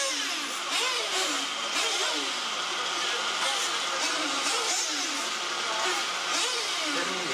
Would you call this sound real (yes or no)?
yes